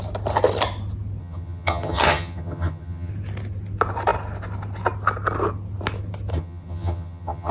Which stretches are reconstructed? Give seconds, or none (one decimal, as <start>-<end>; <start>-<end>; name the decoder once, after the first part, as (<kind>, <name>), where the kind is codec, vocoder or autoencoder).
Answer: 1.2-3.1 (vocoder, HiFi-GAN); 6.3-7.5